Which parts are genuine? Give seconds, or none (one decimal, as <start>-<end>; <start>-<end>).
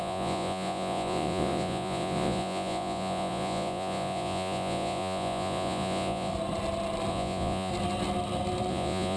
6.3-7.1; 7.7-8.7